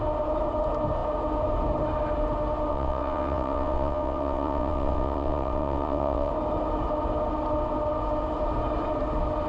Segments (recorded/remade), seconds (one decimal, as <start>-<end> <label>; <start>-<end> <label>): 0.0-2.7 recorded; 2.7-6.3 remade; 6.3-9.5 recorded